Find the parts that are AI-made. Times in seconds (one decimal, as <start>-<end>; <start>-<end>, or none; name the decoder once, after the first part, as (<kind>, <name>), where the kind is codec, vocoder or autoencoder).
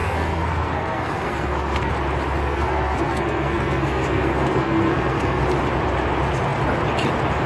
0.0-1.9 (codec, SNAC); 2.4-5.4